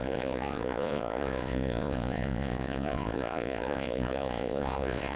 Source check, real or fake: fake